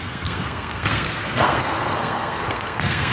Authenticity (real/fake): fake